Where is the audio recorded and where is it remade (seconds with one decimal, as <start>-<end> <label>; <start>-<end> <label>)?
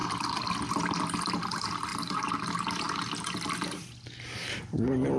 0.0-5.2 recorded